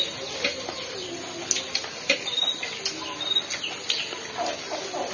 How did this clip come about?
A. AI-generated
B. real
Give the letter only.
B